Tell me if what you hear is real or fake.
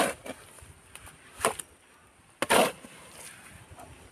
real